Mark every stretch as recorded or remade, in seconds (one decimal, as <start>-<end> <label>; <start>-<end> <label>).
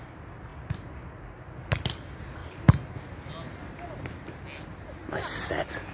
0.0-5.9 recorded